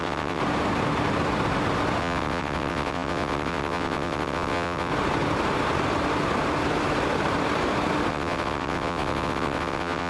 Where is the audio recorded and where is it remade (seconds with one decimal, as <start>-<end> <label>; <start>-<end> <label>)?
0.0-0.4 remade; 0.4-2.0 recorded; 2.0-4.9 remade; 4.9-8.1 recorded; 8.1-10.1 remade